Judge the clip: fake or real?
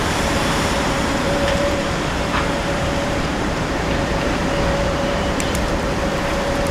fake